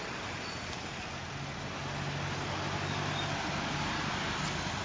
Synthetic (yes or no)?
no